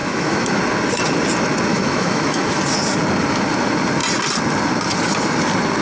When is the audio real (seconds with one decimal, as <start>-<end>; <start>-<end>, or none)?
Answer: 0.6-1.7; 2.6-5.8